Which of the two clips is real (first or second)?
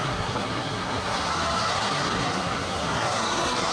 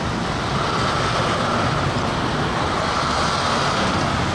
second